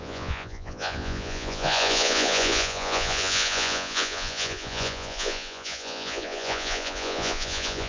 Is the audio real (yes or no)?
no